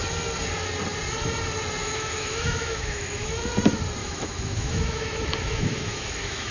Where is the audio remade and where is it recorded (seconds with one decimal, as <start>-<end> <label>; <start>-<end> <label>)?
0.0-1.8 recorded; 1.8-3.3 remade; 3.3-4.0 recorded; 4.0-6.5 remade